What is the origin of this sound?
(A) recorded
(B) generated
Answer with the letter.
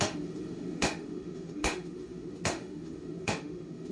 B